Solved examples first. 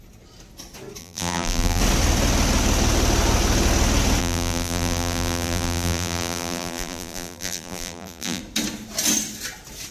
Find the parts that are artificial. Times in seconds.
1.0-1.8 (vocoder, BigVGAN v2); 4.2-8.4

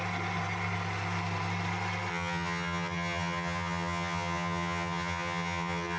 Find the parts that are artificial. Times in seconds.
2.1-6.0 (vocoder, HiFi-GAN)

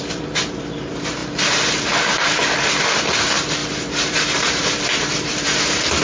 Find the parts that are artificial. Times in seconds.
0.0-6.0 (vocoder, BigVGAN v2)

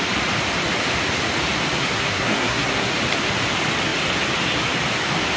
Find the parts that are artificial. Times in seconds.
1.8-2.9 (codec, SNAC)

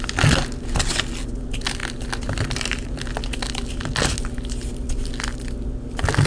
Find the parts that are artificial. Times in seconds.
none

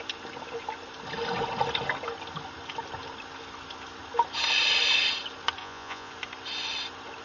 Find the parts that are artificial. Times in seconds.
5.6-6.1 (vocoder, Vocos)

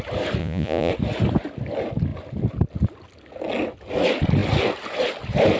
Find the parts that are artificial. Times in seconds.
0.4-0.9 (vocoder, Vocos)